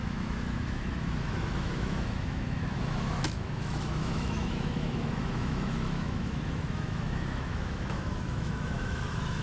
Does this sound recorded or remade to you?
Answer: remade